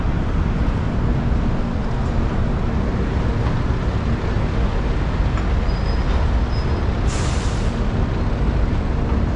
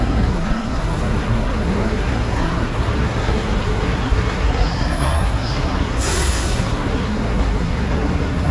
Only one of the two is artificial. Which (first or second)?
second